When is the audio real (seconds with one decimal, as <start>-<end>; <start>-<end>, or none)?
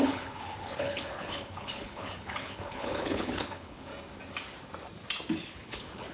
3.9-5.4